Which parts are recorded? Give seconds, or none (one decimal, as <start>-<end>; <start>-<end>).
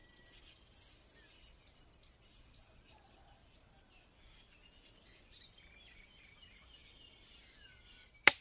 6.8-7.7